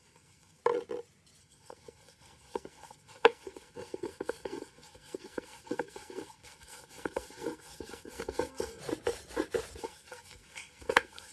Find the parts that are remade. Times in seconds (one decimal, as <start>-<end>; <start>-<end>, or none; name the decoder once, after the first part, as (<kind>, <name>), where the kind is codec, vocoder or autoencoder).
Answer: 0.0-0.6 (codec, SNAC); 1.4-8.8; 9.8-11.3